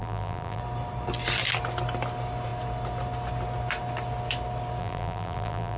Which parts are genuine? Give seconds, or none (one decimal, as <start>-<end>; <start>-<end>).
0.6-4.8